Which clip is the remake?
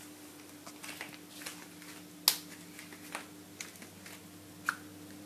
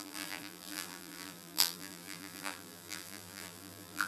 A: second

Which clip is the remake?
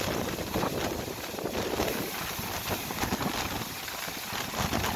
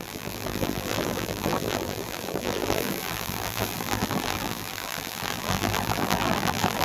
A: second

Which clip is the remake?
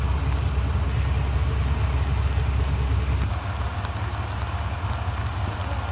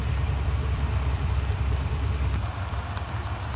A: second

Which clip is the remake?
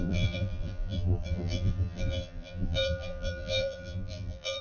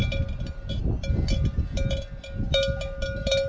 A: first